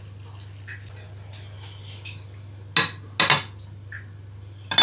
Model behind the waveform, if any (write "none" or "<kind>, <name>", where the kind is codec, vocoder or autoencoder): none